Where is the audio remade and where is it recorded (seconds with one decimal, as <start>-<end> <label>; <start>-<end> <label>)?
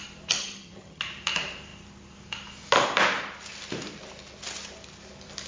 0.0-0.4 recorded; 0.4-1.0 remade; 1.0-5.5 recorded